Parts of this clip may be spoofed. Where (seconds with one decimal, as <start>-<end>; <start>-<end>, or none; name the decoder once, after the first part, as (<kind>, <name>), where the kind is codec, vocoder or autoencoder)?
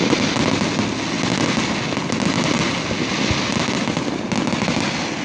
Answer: none